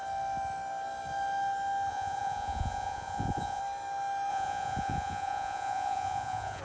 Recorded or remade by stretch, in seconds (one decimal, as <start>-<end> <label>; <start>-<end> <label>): 0.0-1.9 recorded; 1.9-3.6 remade; 3.6-4.3 recorded; 4.3-6.6 remade